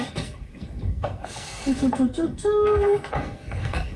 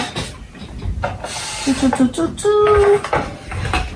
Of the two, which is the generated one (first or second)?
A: first